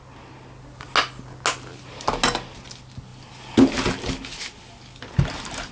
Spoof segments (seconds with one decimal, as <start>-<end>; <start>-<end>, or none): none